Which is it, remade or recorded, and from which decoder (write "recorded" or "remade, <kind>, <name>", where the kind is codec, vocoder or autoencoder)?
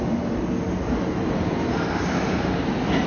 recorded